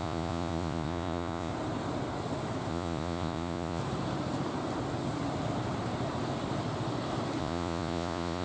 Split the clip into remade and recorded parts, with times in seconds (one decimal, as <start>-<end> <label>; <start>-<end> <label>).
0.0-1.5 remade; 1.5-2.7 recorded; 2.7-3.8 remade; 3.8-7.4 recorded; 7.4-8.4 remade